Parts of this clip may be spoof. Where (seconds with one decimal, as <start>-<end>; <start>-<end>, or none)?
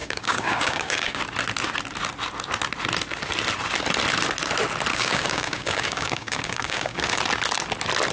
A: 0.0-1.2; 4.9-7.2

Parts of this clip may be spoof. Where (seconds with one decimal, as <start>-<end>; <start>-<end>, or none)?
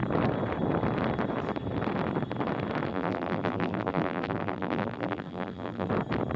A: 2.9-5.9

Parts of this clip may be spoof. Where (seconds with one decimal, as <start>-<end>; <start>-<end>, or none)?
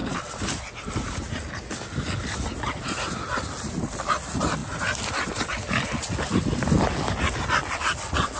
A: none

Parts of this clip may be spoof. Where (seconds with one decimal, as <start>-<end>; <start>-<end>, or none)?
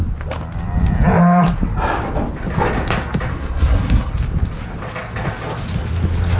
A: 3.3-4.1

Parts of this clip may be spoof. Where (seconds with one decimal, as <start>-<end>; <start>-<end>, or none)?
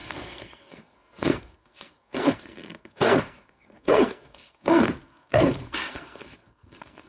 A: 0.0-7.1